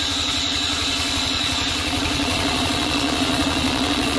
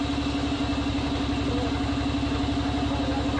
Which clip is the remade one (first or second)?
first